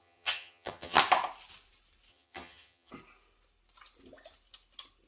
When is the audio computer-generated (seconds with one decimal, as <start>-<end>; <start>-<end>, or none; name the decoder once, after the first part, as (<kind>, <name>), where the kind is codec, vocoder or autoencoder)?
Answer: 0.0-1.0 (vocoder, HiFi-GAN); 2.1-2.9